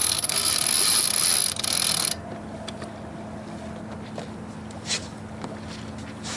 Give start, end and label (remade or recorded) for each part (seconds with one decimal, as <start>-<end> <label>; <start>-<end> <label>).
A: 0.0-0.5 remade; 0.5-6.4 recorded

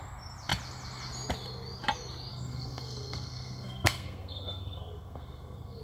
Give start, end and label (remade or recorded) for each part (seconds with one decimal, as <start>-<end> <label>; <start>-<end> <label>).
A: 0.0-2.3 recorded; 2.3-5.8 remade

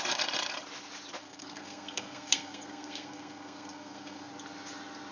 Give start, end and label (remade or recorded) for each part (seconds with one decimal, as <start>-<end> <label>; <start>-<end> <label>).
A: 0.0-1.2 recorded; 1.2-4.3 remade; 4.3-5.1 recorded

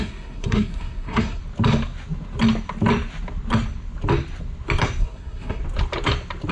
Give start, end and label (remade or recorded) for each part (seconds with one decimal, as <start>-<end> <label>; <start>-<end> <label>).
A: 0.0-1.4 remade; 1.4-5.0 recorded; 5.0-5.6 remade; 5.6-6.5 recorded

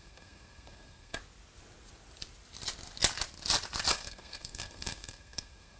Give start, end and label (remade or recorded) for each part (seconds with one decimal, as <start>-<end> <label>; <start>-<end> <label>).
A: 0.0-1.2 remade; 1.2-3.9 recorded; 3.9-5.8 remade

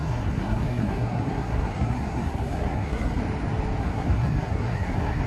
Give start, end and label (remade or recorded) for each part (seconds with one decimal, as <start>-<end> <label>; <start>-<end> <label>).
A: 0.0-3.2 remade; 3.2-3.8 recorded; 3.8-5.3 remade

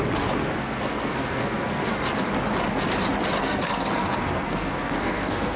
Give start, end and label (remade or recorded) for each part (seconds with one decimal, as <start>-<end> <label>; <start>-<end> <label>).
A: 0.0-0.6 recorded; 0.6-1.9 remade; 1.9-3.4 recorded; 3.4-5.6 remade

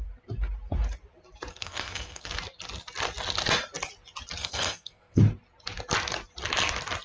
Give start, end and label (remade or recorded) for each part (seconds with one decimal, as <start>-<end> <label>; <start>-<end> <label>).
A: 0.0-1.5 recorded; 1.5-2.3 remade; 2.3-4.4 recorded; 4.4-5.2 remade; 5.2-7.0 recorded